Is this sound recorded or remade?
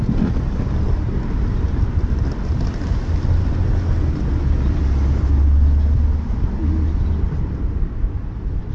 recorded